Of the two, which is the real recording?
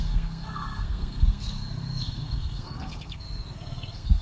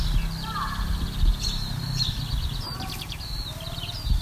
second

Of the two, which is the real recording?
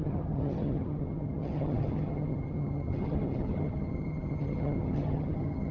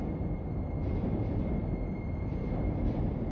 second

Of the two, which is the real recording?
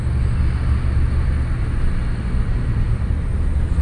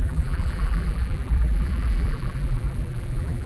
first